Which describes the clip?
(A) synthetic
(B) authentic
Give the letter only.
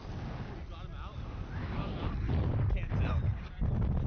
B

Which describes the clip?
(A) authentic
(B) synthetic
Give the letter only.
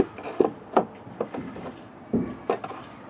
A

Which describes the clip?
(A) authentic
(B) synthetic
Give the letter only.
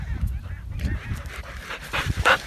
B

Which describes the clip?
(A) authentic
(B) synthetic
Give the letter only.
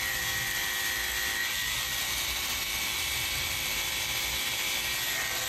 B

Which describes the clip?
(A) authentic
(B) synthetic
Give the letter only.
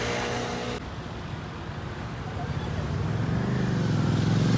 A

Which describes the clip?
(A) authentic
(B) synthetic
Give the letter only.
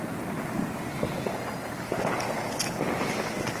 A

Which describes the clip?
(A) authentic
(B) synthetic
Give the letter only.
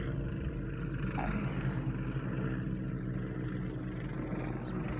A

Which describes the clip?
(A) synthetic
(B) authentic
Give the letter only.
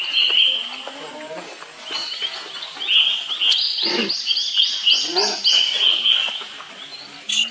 B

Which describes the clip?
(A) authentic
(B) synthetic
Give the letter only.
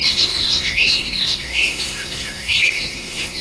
B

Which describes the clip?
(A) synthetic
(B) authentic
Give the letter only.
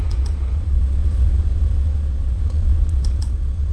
A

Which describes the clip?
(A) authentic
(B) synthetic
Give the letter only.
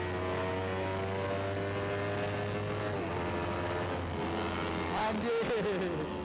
A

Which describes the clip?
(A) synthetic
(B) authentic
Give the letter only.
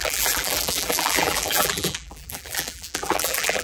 A